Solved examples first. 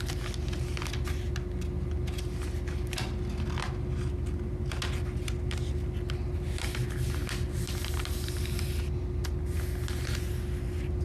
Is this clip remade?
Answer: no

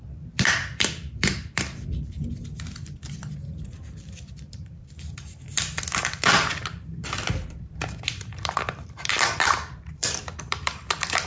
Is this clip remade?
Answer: yes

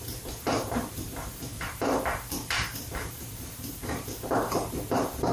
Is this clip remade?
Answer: yes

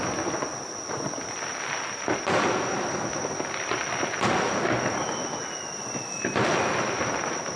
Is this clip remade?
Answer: no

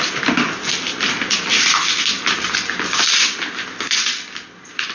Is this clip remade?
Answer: no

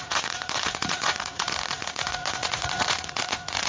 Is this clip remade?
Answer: yes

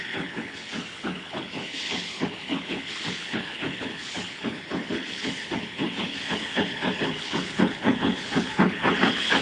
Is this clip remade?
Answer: yes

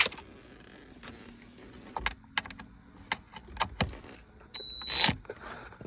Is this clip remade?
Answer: no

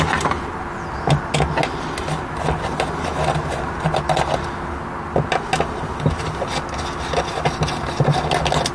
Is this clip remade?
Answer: no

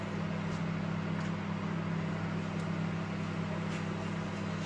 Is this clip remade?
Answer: no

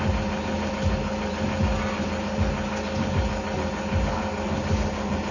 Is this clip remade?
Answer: no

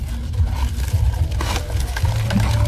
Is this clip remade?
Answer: no